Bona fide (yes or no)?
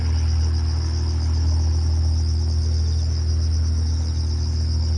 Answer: yes